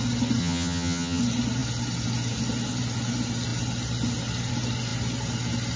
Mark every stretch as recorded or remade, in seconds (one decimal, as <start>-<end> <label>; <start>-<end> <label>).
0.0-0.4 recorded; 0.4-1.2 remade; 1.2-5.8 recorded